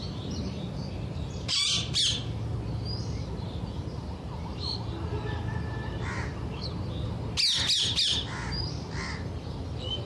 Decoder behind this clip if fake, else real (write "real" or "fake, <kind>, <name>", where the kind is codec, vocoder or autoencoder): real